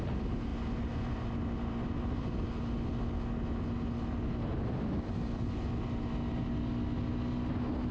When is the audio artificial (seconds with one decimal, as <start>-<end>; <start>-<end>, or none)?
none